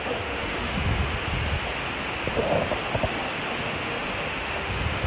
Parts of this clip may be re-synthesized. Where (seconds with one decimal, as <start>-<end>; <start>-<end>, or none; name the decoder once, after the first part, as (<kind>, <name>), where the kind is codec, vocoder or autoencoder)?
0.0-1.2 (autoencoder, DAC-VAE); 3.6-5.1

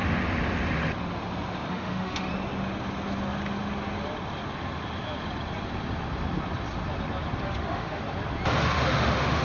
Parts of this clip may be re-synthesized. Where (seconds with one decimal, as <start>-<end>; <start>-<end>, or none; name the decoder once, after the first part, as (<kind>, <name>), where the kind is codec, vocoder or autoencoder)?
1.7-2.3 (autoencoder, DAC-VAE); 7.4-8.0; 8.6-9.4

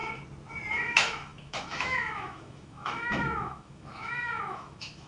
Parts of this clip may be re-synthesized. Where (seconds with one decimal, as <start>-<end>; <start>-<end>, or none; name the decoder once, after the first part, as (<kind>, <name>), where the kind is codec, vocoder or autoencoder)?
0.7-5.1 (autoencoder, DAC-VAE)

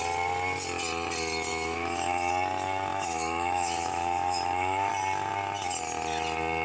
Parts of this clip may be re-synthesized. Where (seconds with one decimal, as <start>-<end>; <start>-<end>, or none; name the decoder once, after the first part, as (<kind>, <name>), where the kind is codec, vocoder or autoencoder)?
1.5-2.3 (autoencoder, DAC-VAE); 2.9-4.9

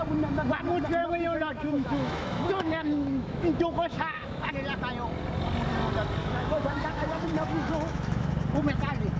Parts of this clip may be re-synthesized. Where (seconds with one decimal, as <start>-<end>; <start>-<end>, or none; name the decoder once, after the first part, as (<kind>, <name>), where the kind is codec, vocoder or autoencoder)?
1.0-4.5 (autoencoder, DAC-VAE); 6.2-8.3

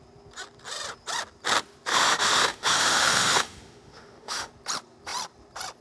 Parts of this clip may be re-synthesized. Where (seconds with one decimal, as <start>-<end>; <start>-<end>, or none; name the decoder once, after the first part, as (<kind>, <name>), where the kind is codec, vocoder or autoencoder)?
1.9-4.5 (autoencoder, DAC-VAE)

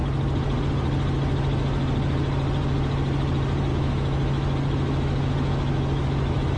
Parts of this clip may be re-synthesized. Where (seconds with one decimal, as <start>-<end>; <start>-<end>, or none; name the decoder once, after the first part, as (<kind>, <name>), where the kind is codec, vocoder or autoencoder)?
3.7-6.6 (autoencoder, DAC-VAE)